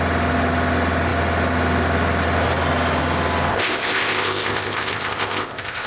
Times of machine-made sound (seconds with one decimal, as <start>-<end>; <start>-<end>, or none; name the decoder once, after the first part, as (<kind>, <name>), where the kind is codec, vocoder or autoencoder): 3.5-5.9 (codec, ZipCodec)

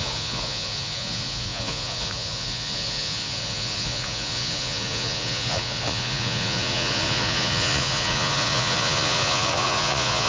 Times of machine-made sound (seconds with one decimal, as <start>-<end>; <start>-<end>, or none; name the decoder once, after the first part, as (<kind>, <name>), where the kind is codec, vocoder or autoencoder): 0.0-10.3 (vocoder, Vocos)

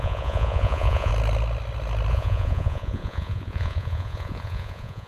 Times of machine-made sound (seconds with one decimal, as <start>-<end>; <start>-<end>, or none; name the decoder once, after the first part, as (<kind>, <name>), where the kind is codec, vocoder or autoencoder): 0.0-1.1 (vocoder, Vocos); 2.1-5.1

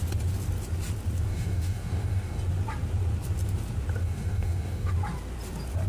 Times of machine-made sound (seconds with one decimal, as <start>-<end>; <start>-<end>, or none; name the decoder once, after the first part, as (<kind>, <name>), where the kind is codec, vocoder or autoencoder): 1.3-2.4 (codec, DAC); 4.0-4.9